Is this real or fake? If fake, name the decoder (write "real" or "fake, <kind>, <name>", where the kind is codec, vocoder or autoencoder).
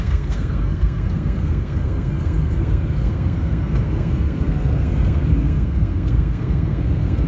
fake, codec, SNAC